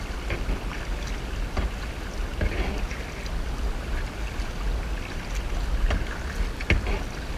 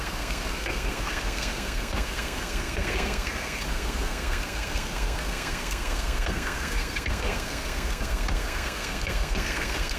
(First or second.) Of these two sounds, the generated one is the second